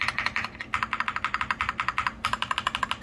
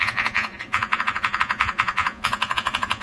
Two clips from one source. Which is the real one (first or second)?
first